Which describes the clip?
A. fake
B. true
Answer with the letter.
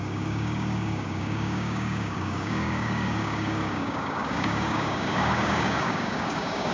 A